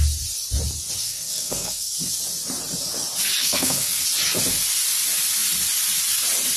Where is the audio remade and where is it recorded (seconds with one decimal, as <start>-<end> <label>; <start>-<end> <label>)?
0.0-1.0 recorded; 1.0-1.9 remade; 1.9-3.4 recorded; 3.4-4.0 remade; 4.0-6.6 recorded